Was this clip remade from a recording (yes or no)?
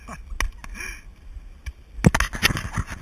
no